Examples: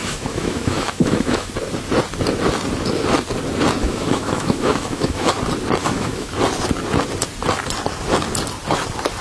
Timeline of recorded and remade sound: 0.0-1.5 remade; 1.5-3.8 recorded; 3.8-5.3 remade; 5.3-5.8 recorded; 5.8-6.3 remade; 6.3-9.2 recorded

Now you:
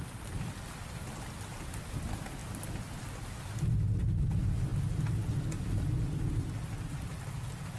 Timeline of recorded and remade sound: 0.0-7.8 recorded

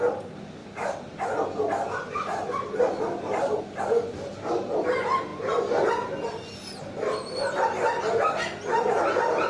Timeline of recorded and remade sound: 0.0-9.5 recorded

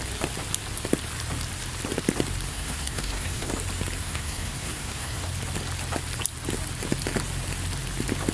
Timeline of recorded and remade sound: 0.0-2.5 recorded; 2.5-3.5 remade; 3.5-4.0 recorded; 4.0-5.3 remade; 5.3-8.3 recorded